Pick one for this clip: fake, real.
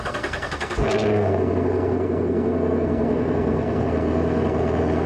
fake